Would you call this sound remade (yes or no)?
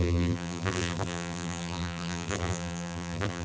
yes